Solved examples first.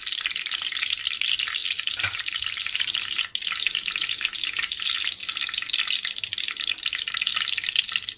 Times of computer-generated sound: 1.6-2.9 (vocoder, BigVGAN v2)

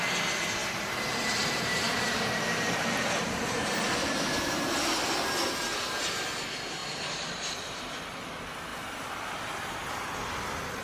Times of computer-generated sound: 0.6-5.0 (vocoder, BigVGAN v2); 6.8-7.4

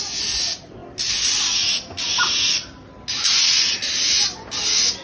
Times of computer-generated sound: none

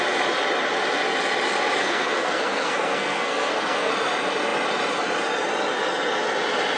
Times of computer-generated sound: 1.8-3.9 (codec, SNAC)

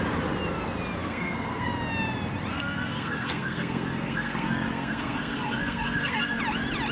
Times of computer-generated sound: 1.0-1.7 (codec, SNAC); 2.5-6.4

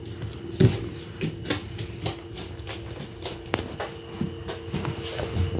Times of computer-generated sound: none